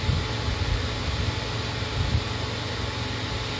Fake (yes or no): no